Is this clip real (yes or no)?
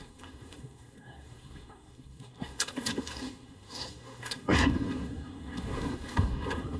no